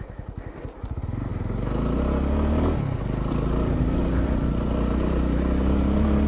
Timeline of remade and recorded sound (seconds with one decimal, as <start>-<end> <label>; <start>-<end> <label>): 0.0-6.3 recorded